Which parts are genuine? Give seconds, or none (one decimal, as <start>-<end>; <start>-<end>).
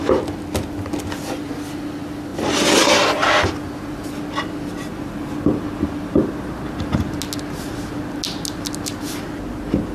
0.0-9.9